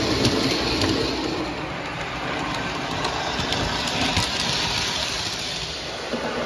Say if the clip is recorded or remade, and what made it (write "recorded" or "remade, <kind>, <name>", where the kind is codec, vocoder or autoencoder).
recorded